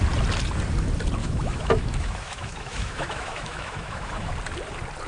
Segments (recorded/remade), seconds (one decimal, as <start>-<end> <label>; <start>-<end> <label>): 0.0-1.2 recorded; 1.2-4.3 remade; 4.3-5.1 recorded